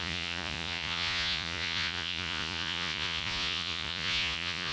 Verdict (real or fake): fake